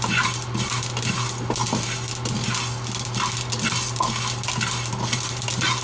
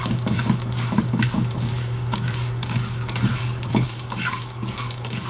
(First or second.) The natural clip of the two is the first